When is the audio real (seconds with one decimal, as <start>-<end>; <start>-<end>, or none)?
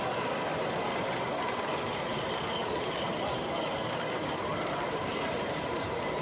0.0-4.5